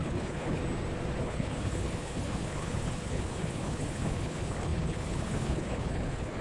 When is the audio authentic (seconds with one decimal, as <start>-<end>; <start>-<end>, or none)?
0.6-1.2